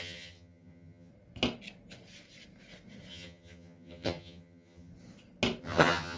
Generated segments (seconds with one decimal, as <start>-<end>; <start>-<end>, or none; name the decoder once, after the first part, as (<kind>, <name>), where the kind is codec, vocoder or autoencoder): 0.0-1.1 (vocoder, HiFi-GAN); 3.1-4.9; 5.6-6.2